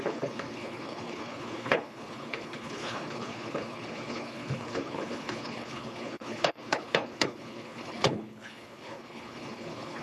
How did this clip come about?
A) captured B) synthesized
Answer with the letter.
B